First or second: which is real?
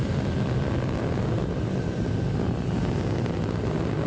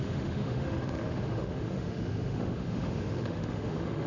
first